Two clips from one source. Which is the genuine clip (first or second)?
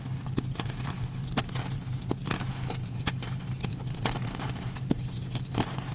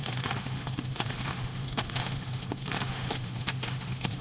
first